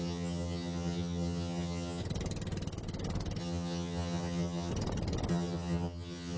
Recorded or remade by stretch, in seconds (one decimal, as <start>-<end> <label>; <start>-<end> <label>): 0.0-2.0 remade; 2.0-3.4 recorded; 3.4-4.7 remade; 4.7-5.3 recorded; 5.3-6.4 remade